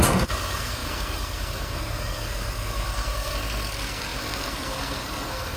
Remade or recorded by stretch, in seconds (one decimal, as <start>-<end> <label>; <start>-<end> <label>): 0.0-5.6 remade